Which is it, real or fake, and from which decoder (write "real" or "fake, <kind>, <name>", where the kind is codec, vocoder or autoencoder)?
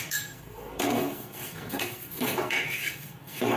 fake, codec, SNAC